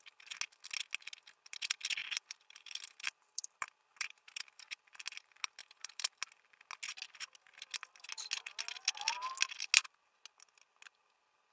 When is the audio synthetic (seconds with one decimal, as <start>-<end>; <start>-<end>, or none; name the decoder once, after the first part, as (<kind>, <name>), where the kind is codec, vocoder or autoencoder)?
2.0-4.7 (vocoder, BigVGAN v2); 5.6-6.2

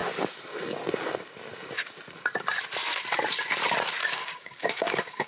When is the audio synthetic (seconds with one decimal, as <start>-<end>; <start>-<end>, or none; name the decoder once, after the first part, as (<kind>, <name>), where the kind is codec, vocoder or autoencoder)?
4.0-5.3 (codec, DAC)